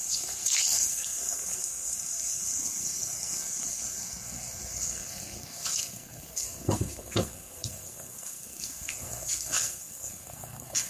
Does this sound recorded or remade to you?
remade